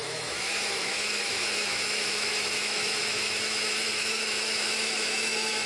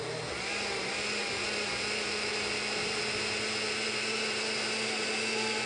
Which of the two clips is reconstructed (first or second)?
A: first